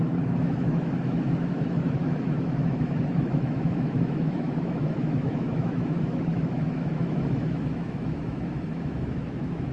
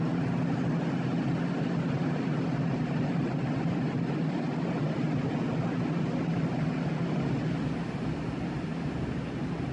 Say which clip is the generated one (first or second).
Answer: first